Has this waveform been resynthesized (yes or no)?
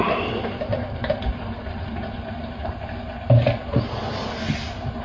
no